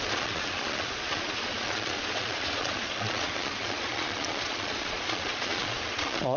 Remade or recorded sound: remade